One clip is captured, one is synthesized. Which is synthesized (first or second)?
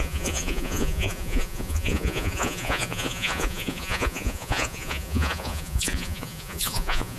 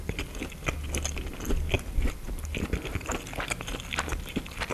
first